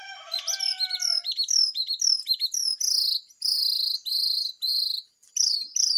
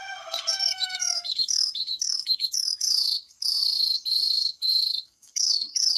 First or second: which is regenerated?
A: second